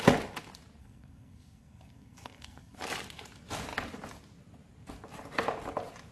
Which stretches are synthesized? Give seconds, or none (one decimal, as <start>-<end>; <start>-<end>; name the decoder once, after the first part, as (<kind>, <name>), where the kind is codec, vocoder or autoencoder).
0.8-2.8 (codec, SNAC)